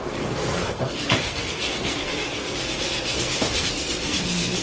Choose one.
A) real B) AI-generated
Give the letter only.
B